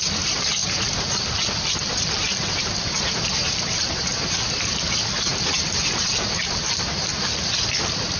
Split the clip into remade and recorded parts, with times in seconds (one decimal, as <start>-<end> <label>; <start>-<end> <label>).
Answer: 0.0-0.6 recorded; 0.6-1.3 remade; 1.3-1.8 recorded; 1.8-4.0 remade; 4.0-5.3 recorded; 5.3-6.7 remade; 6.7-8.2 recorded